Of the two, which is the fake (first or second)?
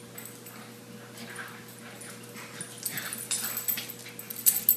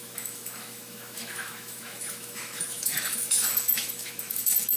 second